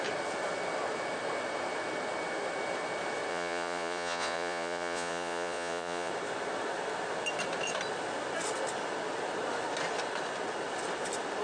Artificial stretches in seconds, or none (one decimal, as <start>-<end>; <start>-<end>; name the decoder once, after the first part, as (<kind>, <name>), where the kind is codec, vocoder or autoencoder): 3.3-6.1 (vocoder, Vocos)